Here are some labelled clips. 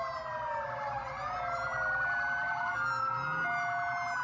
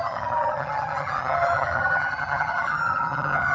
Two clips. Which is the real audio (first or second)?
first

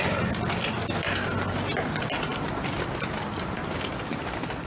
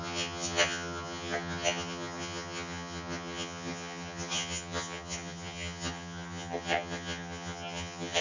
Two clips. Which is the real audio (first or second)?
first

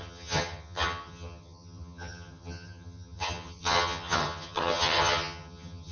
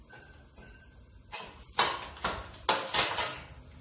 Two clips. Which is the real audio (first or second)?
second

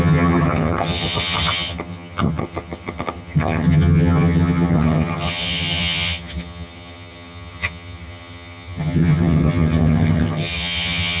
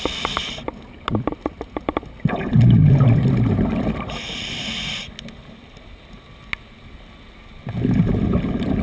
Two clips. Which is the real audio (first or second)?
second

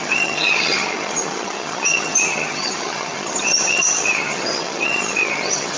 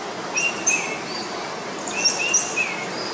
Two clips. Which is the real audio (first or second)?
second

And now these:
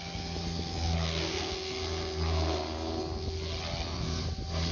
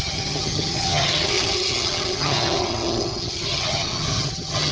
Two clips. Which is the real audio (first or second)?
first